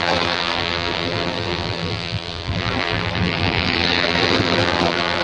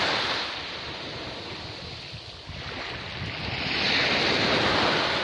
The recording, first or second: second